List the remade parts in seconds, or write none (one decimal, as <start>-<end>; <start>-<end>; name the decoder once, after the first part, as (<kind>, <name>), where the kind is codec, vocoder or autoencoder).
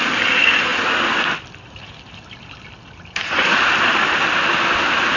none